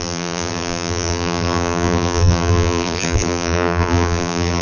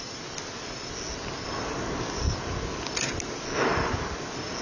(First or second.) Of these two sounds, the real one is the second